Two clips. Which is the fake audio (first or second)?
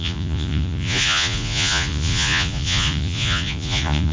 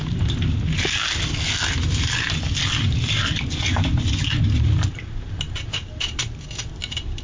first